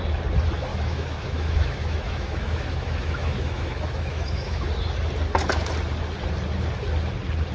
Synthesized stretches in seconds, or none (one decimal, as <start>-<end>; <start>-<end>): 0.7-4.7